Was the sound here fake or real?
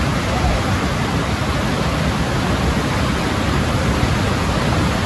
real